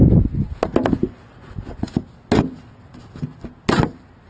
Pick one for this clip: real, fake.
real